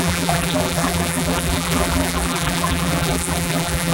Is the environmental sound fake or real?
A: fake